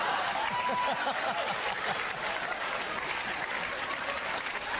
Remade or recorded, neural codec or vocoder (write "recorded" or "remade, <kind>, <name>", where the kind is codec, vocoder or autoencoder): recorded